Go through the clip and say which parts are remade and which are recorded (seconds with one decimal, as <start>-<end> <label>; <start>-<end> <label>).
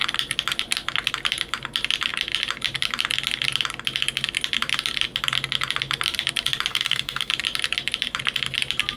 0.0-6.7 recorded; 6.7-7.3 remade; 7.3-9.0 recorded